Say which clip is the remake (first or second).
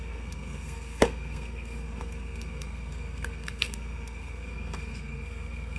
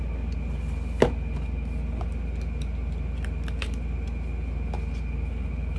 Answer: first